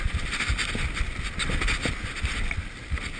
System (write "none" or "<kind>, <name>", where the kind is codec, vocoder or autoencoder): none